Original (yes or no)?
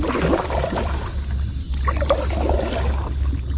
yes